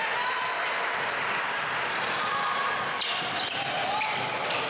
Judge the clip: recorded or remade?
recorded